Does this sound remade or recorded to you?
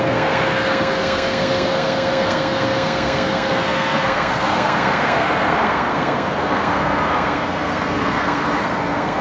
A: remade